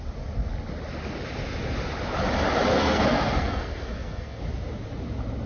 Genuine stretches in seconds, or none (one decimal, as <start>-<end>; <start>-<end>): 0.0-2.7; 4.4-5.5